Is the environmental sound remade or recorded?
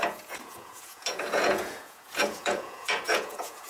remade